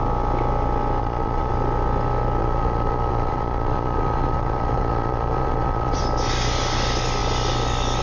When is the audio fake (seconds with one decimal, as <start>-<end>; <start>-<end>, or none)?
1.0-1.5; 2.4-6.0